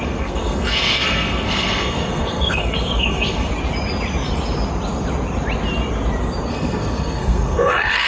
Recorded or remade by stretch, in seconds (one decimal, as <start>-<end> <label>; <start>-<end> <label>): 0.0-3.5 remade; 3.5-6.5 recorded; 6.5-8.1 remade